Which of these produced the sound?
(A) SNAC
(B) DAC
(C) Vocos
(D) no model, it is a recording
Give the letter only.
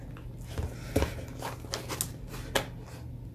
D